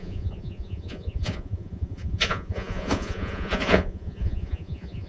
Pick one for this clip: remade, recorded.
remade